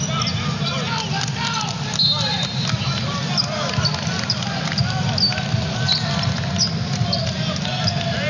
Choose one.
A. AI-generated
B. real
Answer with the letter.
B